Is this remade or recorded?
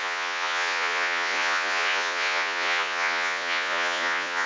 remade